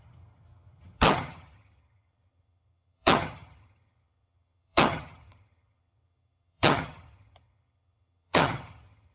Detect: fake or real fake